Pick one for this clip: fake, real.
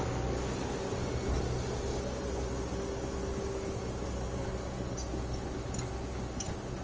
real